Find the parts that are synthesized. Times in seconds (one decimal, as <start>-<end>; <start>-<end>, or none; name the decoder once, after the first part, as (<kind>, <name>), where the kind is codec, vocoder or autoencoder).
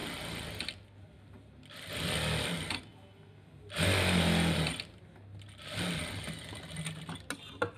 none